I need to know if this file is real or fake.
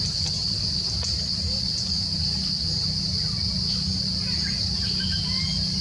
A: real